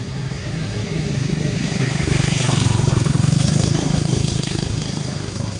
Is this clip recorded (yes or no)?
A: no